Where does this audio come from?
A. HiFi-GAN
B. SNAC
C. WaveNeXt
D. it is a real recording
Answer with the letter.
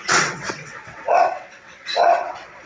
C